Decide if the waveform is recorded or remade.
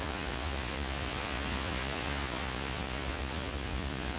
remade